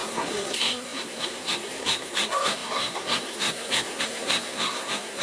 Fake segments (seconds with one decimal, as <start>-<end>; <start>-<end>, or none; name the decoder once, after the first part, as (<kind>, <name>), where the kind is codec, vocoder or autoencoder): 0.0-5.2 (codec, SNAC)